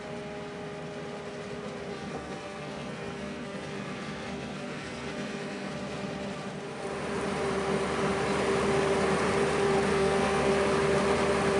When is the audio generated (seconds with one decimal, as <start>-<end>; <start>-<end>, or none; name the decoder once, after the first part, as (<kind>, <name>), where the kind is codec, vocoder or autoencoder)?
1.9-5.7 (codec, SNAC); 9.9-10.5